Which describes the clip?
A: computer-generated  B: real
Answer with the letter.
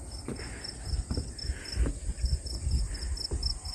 B